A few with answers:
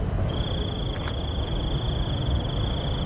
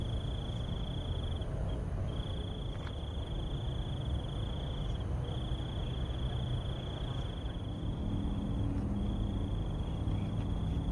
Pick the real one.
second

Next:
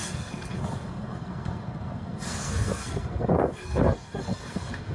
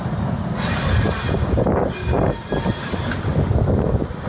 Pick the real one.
second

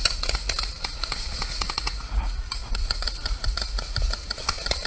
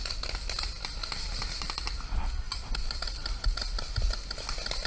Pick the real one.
second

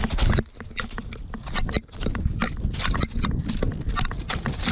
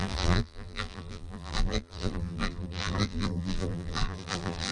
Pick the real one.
first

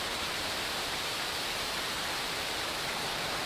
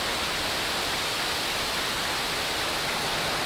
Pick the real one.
second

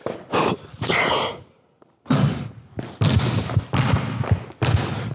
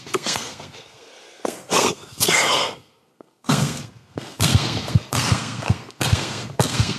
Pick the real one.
first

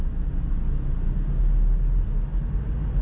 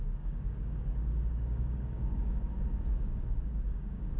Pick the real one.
first